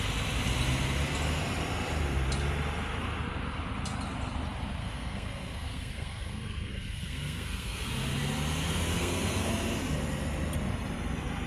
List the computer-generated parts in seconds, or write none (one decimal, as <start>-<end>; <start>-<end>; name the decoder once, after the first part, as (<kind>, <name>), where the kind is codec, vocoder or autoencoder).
4.8-7.9 (codec, SNAC); 8.9-9.5